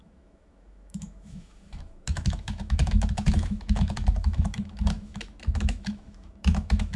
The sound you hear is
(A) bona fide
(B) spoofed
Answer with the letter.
B